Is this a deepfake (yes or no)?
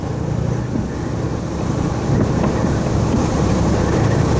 no